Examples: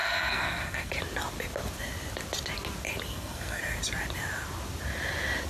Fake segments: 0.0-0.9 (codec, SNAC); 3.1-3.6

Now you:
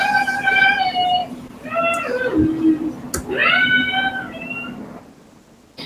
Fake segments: 1.2-2.2 (vocoder, BigVGAN v2)

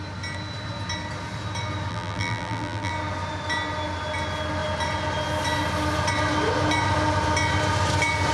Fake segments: 1.9-2.9 (vocoder, BigVGAN v2)

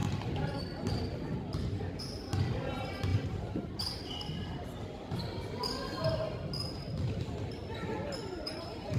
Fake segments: 3.1-4.0 (vocoder, BigVGAN v2); 8.2-9.0

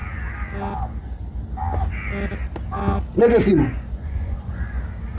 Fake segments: 3.5-4.8 (vocoder, Vocos)